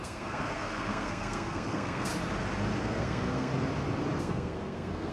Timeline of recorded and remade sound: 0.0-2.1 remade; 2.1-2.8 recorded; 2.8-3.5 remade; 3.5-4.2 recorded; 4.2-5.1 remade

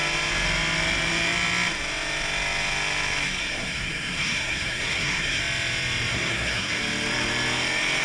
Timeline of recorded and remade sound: 0.0-3.4 recorded; 3.4-5.4 remade; 5.4-6.1 recorded; 6.1-6.8 remade; 6.8-8.0 recorded